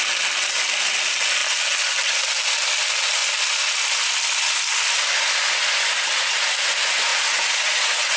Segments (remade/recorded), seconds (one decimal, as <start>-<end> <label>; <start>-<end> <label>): 0.0-7.1 recorded; 7.1-8.2 remade